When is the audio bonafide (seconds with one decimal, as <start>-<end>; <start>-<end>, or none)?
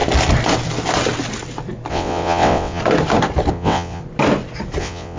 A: 0.0-1.9; 2.8-3.5; 4.0-4.8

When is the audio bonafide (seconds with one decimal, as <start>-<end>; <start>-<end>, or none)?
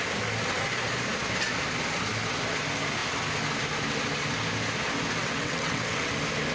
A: 0.0-5.2; 6.1-6.5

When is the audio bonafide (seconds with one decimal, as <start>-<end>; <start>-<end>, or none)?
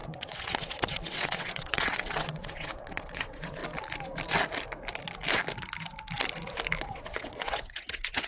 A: 3.6-6.8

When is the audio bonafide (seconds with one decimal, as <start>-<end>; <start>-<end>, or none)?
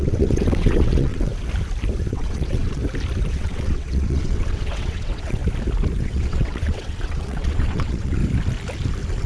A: 1.3-2.1; 2.8-3.3; 5.4-6.0; 8.2-9.3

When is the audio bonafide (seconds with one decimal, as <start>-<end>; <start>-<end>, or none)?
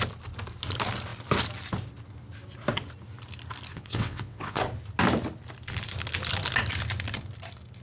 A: 0.0-3.7; 4.6-7.8